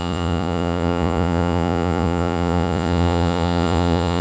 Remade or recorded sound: remade